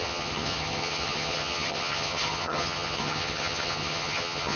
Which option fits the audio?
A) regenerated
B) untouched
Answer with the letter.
A